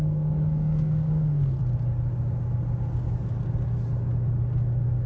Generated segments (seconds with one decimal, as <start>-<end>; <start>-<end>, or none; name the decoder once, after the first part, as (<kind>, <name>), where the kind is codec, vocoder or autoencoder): 0.0-1.6 (codec, SNAC)